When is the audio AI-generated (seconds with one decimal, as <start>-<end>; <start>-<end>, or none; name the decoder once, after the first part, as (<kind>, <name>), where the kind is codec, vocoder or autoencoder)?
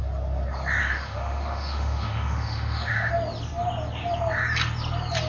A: 0.8-3.1 (autoencoder, DAC-VAE)